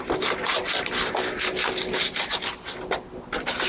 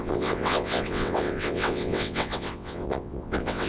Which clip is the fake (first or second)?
second